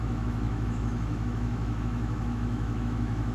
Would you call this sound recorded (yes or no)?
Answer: no